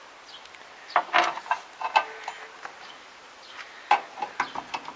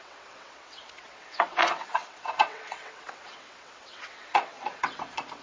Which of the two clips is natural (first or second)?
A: first